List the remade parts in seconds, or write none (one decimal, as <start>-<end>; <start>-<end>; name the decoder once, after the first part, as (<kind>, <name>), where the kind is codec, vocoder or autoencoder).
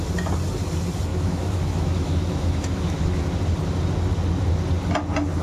1.1-3.2 (autoencoder, DAC-VAE)